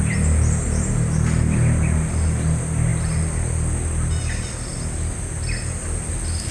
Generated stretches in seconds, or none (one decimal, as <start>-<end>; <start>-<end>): none